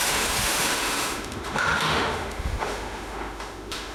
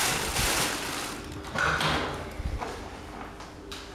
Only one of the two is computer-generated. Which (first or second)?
first